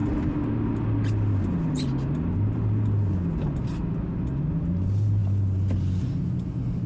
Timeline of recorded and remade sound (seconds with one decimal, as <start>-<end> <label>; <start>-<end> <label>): 0.0-6.9 recorded